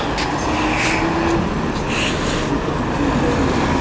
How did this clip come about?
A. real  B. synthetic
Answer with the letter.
A